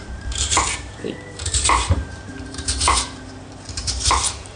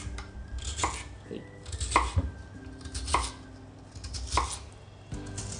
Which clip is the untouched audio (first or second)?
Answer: second